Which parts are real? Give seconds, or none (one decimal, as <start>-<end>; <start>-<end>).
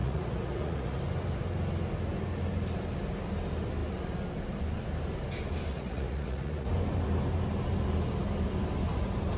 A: 1.0-5.7; 6.7-9.4